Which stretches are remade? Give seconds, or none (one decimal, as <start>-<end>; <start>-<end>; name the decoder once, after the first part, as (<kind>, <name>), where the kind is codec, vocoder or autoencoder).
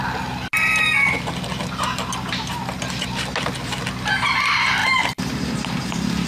4.8-5.5 (vocoder, BigVGAN v2)